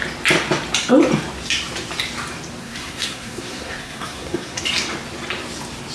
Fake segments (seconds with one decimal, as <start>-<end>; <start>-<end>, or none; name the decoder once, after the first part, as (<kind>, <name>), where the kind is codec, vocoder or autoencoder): 2.6-4.6 (codec, SNAC)